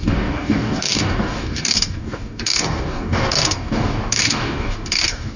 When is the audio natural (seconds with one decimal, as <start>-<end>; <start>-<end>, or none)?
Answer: none